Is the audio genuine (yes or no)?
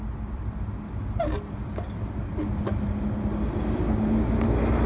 yes